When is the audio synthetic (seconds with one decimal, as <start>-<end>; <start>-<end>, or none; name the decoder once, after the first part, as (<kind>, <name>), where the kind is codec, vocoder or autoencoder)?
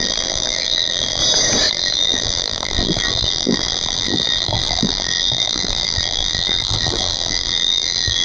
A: 0.0-1.2 (vocoder, BigVGAN v2); 1.7-8.2